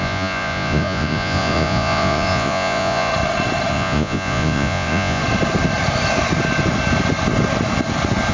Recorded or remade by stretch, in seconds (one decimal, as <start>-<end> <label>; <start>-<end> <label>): 0.0-3.1 remade; 3.1-3.7 recorded; 3.7-5.2 remade; 5.2-8.3 recorded